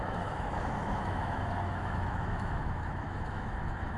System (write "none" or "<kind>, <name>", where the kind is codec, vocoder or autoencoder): autoencoder, DAC-VAE